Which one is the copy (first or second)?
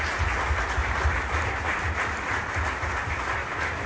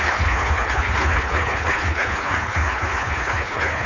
second